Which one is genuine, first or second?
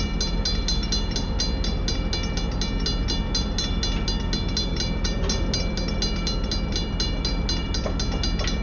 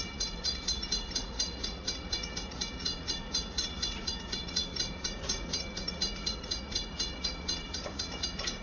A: first